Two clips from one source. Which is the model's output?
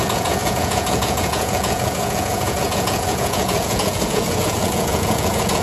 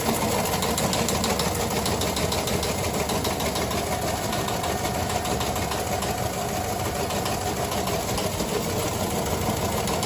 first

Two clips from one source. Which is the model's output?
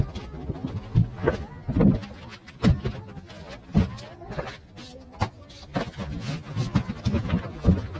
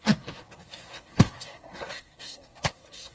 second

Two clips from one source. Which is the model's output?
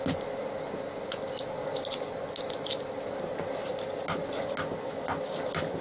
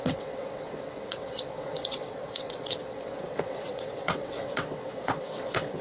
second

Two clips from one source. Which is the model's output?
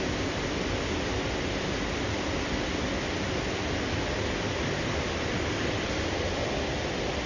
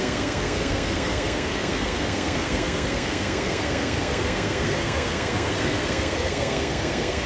second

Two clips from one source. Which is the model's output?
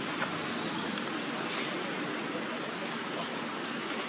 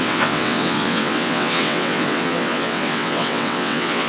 second